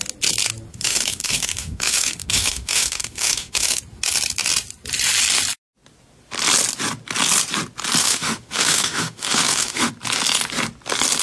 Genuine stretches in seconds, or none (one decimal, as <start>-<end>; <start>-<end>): 0.0-0.7; 3.8-8.0; 9.9-11.2